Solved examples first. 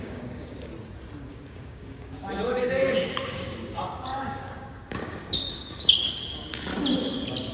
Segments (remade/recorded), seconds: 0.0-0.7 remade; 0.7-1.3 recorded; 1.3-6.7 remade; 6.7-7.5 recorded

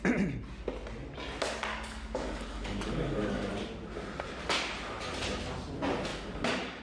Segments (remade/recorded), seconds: 0.0-1.7 recorded; 1.7-3.5 remade; 3.5-6.1 recorded; 6.1-6.8 remade

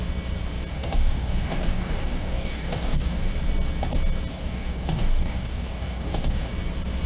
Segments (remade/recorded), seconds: 0.0-0.7 recorded; 0.7-3.3 remade; 3.3-4.3 recorded; 4.3-6.5 remade; 6.5-7.1 recorded

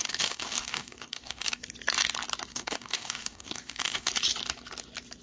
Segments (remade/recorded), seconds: 0.0-1.6 remade; 1.6-2.5 recorded; 2.5-4.1 remade; 4.1-5.2 recorded